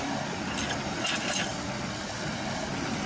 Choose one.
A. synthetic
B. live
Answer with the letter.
B